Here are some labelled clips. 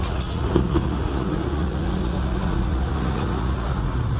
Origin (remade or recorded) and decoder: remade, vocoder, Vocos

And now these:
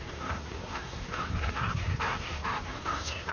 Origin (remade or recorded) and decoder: remade, codec, SNAC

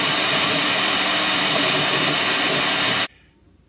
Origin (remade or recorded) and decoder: remade, vocoder, BigVGAN v2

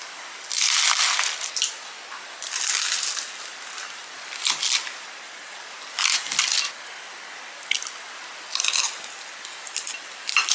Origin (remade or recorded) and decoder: recorded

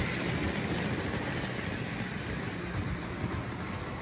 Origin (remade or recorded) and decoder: recorded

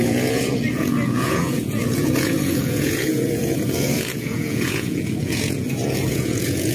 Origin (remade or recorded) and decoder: remade, vocoder, Vocos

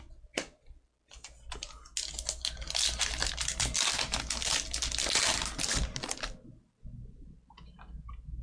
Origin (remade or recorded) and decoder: recorded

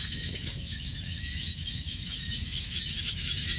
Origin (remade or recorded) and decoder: remade, autoencoder, DAC-VAE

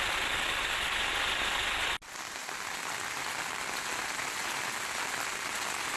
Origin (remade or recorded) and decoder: recorded